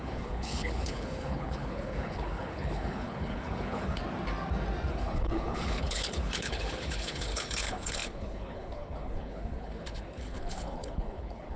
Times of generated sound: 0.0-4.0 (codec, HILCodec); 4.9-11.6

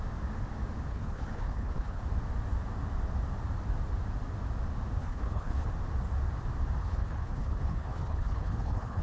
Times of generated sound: 0.9-2.0 (codec, HILCodec); 5.0-5.7; 6.8-9.0